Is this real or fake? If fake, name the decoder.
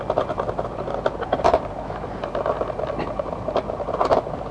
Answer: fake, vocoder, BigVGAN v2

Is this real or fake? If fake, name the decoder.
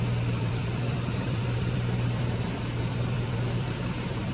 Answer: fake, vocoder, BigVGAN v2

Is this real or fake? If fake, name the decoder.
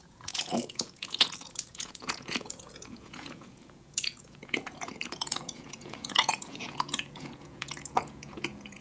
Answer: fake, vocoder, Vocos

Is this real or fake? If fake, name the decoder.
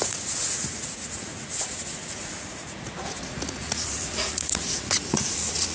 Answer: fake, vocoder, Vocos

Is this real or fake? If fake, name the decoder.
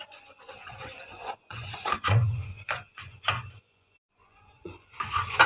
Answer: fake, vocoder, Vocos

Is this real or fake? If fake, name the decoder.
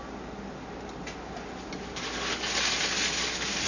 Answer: real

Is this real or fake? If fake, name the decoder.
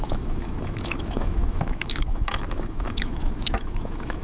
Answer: fake, autoencoder, DAC-VAE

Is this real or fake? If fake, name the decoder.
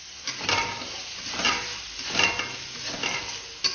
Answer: real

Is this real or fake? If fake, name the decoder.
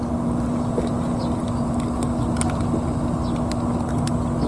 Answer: real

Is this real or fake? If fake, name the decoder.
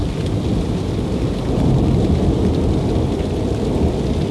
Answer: real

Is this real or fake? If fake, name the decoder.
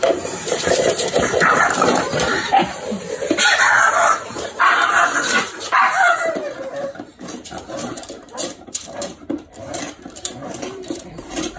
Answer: fake, vocoder, BigVGAN v2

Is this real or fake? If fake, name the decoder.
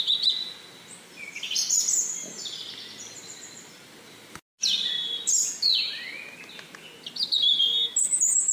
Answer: real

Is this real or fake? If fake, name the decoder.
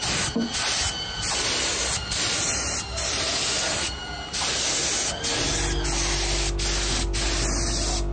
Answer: real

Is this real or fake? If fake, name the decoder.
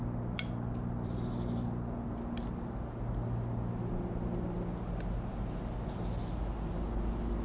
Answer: real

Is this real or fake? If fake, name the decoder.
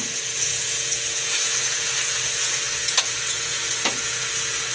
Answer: fake, vocoder, Vocos